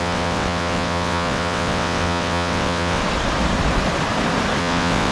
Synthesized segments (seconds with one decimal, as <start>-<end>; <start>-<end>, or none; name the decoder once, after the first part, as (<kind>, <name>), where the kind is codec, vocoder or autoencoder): 0.0-3.0 (vocoder, WaveNeXt); 4.6-5.1